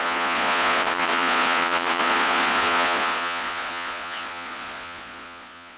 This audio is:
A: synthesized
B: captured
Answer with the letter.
A